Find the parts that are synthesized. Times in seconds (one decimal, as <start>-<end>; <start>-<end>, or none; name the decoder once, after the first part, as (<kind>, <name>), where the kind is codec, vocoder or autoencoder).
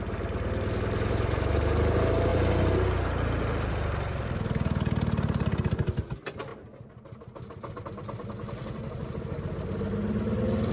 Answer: none